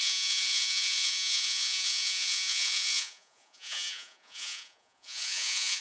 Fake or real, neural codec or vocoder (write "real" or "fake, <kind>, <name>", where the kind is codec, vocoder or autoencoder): fake, vocoder, Vocos